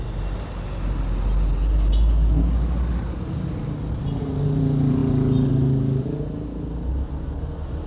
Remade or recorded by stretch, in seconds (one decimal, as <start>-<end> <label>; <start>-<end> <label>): 0.0-7.9 recorded